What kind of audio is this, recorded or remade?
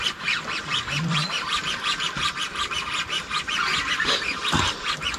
remade